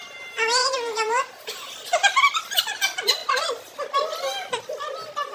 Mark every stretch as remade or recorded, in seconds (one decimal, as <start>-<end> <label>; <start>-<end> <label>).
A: 0.0-0.6 recorded; 0.6-1.7 remade; 1.7-5.3 recorded